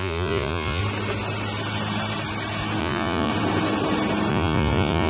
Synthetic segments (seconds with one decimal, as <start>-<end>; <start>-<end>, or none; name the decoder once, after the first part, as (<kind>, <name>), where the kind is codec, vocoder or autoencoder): 0.0-0.8 (vocoder, Vocos); 2.8-3.3; 4.3-5.1